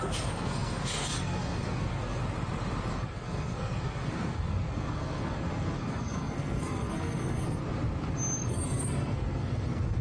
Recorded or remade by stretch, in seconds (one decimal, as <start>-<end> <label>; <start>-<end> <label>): 0.0-2.2 remade; 2.2-2.9 recorded; 2.9-7.6 remade; 7.6-8.5 recorded; 8.5-10.0 remade